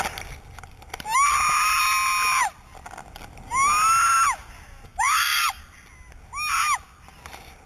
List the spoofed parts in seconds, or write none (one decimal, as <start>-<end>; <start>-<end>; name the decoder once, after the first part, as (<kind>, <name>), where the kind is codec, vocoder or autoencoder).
none